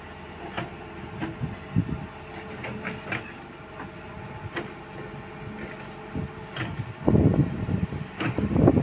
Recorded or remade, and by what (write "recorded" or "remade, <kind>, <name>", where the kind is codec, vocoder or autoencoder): recorded